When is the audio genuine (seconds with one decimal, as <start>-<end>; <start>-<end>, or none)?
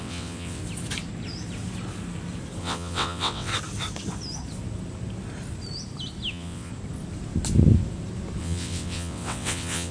0.6-2.6; 3.5-6.3; 6.7-8.4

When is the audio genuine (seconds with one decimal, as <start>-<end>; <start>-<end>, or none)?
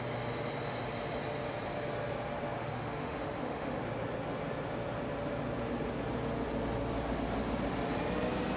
0.0-2.6; 3.8-8.6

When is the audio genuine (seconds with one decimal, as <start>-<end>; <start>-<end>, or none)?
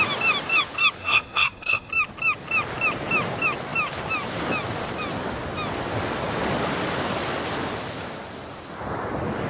0.0-1.0; 1.9-9.5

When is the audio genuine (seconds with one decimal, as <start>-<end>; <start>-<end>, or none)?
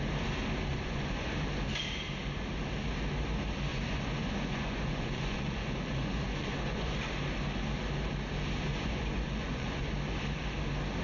0.0-0.7; 1.3-3.7; 7.1-8.7; 9.9-11.0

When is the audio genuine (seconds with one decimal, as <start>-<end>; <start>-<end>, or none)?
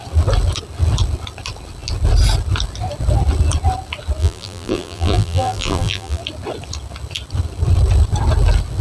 0.0-4.2; 6.2-8.8